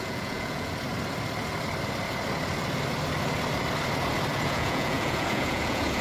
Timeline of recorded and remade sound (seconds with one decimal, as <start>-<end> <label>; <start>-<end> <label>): 0.0-0.7 remade; 0.7-4.3 recorded; 4.3-6.0 remade